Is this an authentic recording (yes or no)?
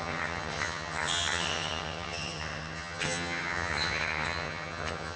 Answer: no